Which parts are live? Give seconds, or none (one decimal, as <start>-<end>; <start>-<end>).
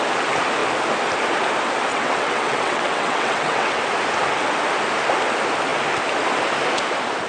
0.0-1.9; 3.8-7.3